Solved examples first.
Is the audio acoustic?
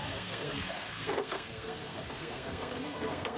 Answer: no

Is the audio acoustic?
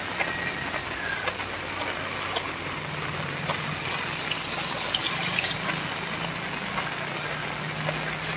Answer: yes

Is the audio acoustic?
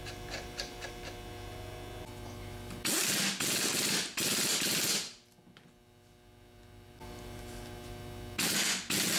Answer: yes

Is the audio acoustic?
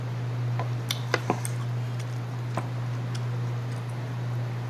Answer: yes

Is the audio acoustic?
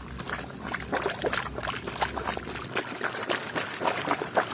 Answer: yes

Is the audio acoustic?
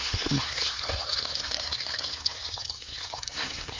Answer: no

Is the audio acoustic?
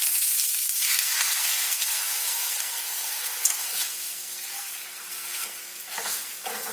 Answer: no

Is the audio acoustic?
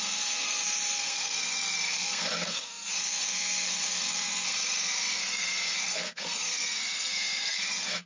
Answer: no